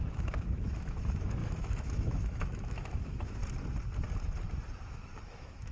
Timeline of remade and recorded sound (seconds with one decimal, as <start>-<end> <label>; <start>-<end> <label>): 0.0-3.4 remade; 3.4-4.8 recorded; 4.8-5.7 remade